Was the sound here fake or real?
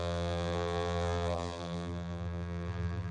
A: fake